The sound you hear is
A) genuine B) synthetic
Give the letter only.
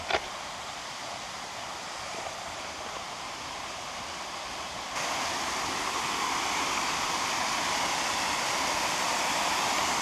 B